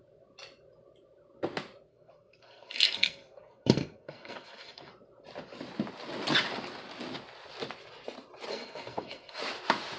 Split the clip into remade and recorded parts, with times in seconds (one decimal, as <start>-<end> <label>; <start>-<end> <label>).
0.0-1.9 recorded; 1.9-4.9 remade; 4.9-8.5 recorded; 8.5-9.4 remade; 9.4-10.0 recorded